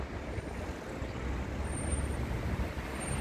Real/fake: real